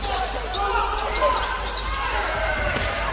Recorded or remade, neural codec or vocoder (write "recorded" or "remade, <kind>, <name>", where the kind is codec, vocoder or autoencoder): recorded